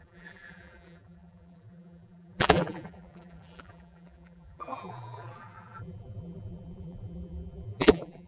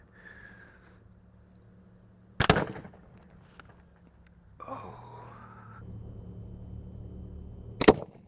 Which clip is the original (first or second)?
second